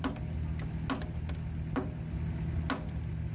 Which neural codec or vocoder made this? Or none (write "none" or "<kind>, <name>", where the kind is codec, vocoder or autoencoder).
none